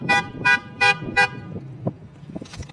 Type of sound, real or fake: fake